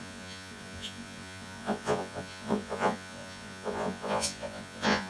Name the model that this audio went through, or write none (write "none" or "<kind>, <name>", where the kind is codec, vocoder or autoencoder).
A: vocoder, Vocos